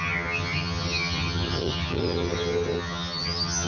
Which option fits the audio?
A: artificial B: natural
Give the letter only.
A